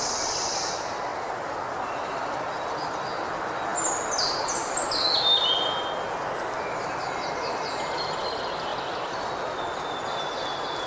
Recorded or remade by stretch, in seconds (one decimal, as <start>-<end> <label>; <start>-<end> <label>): 0.0-10.9 recorded